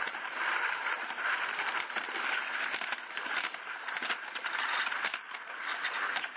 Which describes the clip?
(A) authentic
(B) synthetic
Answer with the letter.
A